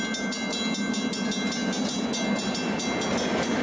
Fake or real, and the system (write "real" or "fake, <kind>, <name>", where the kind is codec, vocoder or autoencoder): real